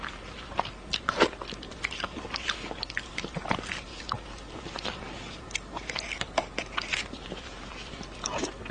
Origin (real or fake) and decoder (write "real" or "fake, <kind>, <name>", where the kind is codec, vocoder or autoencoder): real